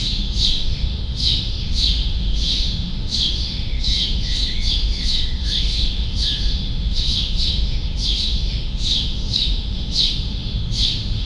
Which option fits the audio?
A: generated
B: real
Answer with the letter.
A